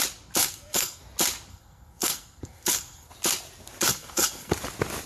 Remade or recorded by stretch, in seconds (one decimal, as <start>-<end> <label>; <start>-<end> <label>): 0.0-0.4 recorded; 0.4-1.0 remade; 1.0-1.5 recorded; 1.5-3.1 remade; 3.1-3.9 recorded; 3.9-4.5 remade; 4.5-5.1 recorded